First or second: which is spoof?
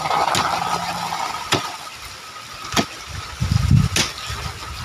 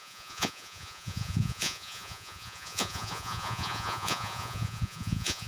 second